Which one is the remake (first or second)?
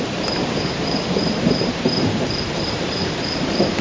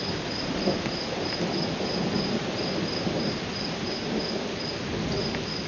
first